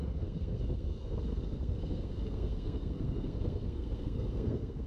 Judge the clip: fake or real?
fake